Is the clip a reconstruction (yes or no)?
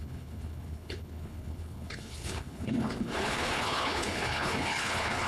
yes